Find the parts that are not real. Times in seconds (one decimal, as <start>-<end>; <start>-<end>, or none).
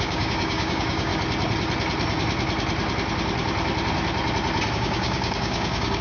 0.0-1.1; 4.7-6.0